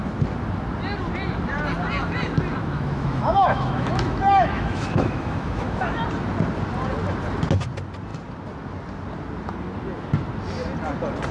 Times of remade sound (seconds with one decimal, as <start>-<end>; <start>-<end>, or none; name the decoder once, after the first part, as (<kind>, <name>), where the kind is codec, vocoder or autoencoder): 2.6-6.0 (autoencoder, DAC-VAE)